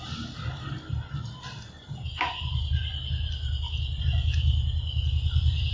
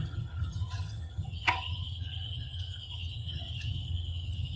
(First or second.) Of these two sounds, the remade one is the second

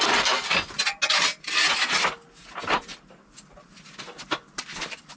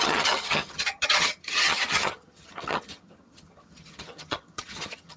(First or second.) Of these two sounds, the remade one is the second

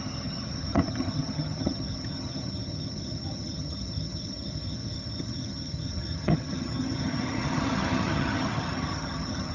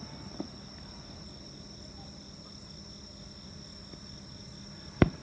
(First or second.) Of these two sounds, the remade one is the first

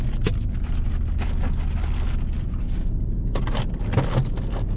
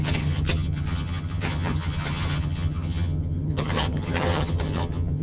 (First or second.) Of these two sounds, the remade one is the second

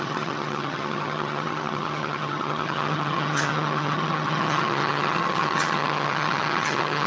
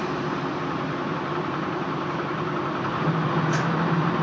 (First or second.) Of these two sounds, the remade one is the first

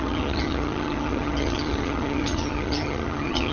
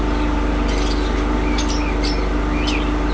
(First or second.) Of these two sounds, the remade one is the first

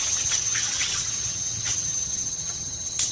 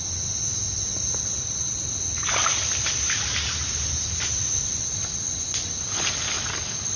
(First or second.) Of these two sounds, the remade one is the first